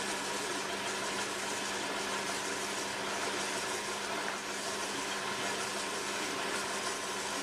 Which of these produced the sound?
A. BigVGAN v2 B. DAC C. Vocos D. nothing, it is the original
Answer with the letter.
D